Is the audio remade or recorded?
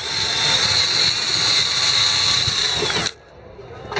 recorded